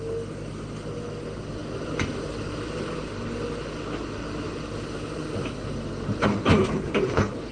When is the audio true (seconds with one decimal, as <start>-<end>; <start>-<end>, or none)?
0.0-6.3

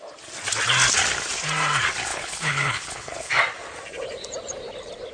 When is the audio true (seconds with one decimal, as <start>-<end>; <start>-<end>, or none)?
0.0-2.1; 3.3-5.1